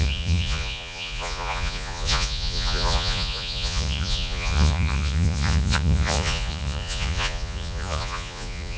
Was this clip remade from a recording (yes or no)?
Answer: yes